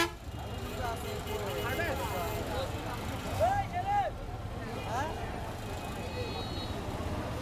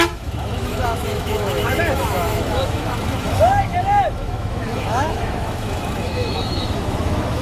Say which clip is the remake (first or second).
second